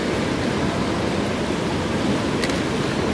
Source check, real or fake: real